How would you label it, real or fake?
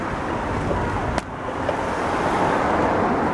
real